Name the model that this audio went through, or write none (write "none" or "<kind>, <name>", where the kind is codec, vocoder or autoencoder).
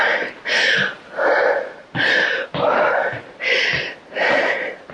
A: none